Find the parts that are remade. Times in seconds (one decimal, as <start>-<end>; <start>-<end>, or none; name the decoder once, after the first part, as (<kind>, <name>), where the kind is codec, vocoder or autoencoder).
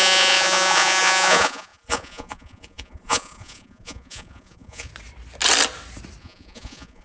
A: 0.0-4.9 (vocoder, Vocos); 6.2-7.0